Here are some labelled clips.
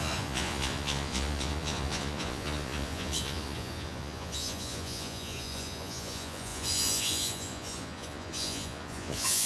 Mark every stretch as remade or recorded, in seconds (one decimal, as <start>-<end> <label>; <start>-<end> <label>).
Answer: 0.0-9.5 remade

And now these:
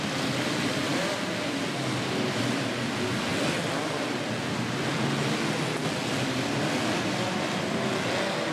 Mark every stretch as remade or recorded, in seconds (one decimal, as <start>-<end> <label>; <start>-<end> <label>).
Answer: 0.0-5.8 recorded; 5.8-7.6 remade; 7.6-8.5 recorded

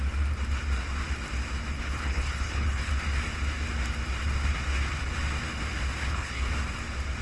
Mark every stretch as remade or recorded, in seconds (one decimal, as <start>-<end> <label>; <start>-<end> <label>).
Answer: 0.0-1.8 recorded; 1.8-2.9 remade; 2.9-6.0 recorded; 6.0-6.5 remade; 6.5-7.2 recorded

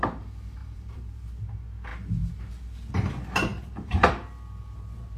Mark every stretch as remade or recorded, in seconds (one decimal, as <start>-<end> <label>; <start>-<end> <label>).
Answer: 0.0-0.6 recorded; 0.6-1.3 remade; 1.3-3.5 recorded; 3.5-4.0 remade; 4.0-5.2 recorded